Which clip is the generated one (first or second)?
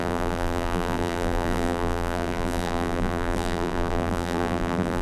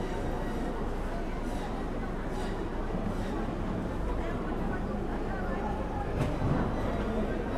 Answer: first